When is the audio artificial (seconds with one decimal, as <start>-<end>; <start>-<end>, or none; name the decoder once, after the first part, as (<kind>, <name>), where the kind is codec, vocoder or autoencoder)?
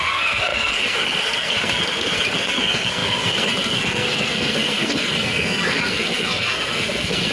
0.0-7.3 (codec, SNAC)